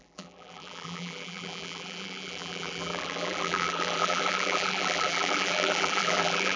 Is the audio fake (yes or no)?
yes